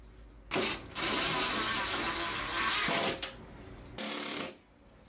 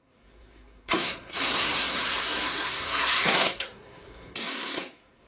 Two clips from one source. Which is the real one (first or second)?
first